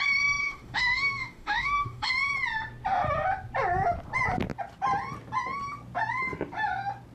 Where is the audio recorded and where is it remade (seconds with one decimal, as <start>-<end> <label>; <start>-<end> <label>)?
0.0-0.4 recorded; 0.4-2.1 remade; 2.1-7.1 recorded